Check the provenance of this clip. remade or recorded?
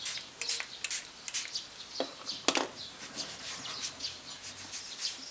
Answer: recorded